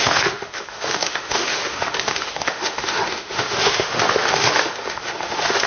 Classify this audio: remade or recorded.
remade